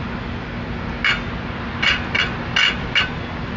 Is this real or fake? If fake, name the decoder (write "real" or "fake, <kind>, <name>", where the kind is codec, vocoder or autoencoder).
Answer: real